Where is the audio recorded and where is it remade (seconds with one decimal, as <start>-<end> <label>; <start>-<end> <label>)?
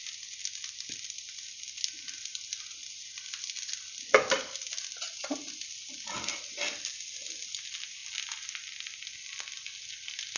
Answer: 0.0-10.4 recorded